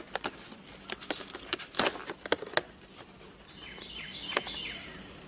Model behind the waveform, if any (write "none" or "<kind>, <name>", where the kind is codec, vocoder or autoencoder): none